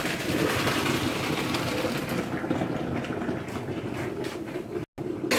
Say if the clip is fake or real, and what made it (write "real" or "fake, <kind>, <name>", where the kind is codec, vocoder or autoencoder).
real